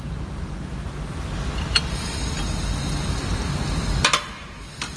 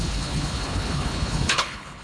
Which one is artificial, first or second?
second